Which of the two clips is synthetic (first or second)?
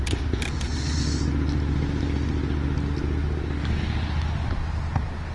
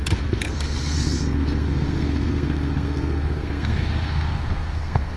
second